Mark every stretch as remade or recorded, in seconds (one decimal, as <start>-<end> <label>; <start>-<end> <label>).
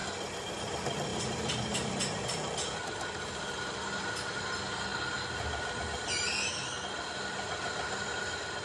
0.0-1.1 recorded; 1.1-4.1 remade; 4.1-8.6 recorded